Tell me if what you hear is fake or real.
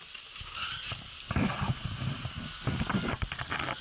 real